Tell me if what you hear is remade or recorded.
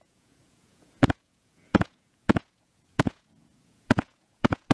remade